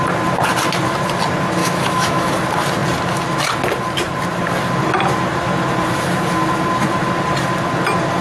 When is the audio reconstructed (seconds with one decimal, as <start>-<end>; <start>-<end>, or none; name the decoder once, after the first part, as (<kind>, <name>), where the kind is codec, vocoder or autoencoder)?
1.6-2.3 (autoencoder, DAC-VAE)